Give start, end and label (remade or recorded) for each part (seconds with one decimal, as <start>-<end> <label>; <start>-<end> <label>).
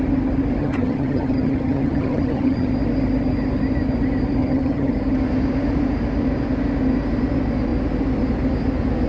0.0-0.6 recorded; 0.6-2.7 remade; 2.7-4.4 recorded; 4.4-4.9 remade; 4.9-9.1 recorded